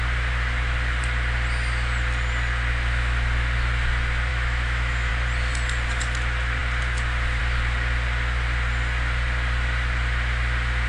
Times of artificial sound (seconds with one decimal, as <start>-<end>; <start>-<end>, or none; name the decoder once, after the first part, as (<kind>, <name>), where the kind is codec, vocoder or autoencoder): 4.3-5.1 (autoencoder, DAC-VAE)

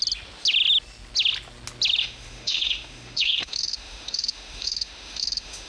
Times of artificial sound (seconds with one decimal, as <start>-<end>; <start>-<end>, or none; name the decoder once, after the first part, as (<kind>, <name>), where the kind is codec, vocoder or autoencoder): 2.0-5.7 (autoencoder, DAC-VAE)

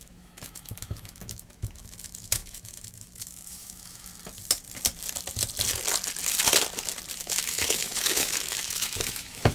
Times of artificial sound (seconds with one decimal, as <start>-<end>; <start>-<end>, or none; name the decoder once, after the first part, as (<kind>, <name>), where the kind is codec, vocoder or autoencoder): 0.0-4.1 (autoencoder, DAC-VAE); 7.2-9.5